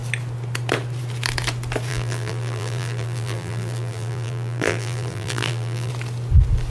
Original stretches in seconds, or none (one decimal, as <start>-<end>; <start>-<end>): 0.0-1.9; 5.9-6.7